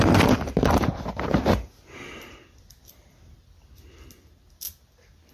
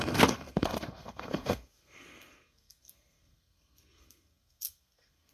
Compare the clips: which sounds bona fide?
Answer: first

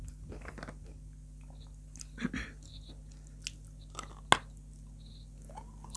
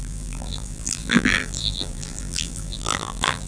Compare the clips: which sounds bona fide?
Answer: first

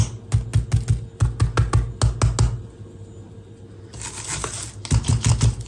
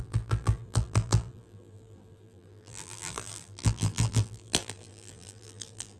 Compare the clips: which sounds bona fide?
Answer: first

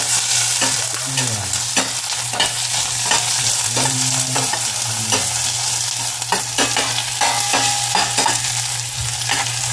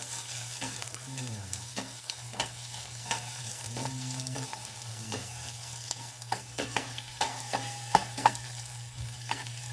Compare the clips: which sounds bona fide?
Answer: first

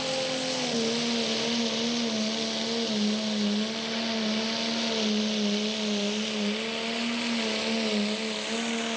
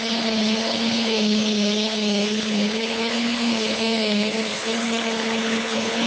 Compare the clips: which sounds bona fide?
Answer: first